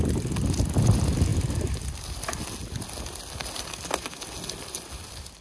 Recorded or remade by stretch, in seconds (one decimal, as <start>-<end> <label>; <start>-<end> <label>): 0.0-5.4 recorded